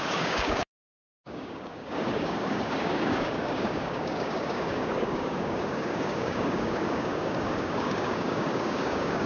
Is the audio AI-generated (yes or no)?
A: yes